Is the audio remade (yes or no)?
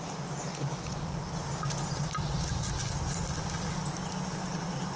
no